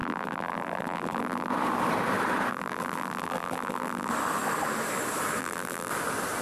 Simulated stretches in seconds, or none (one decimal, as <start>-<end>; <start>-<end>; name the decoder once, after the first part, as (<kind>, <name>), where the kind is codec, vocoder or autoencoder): 0.0-1.5 (vocoder, BigVGAN v2); 2.5-4.1; 5.4-5.9